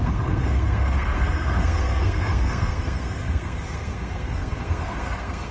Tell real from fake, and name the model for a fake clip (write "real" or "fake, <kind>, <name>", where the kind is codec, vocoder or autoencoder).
fake, codec, SNAC